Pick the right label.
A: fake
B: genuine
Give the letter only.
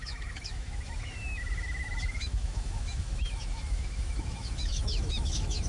A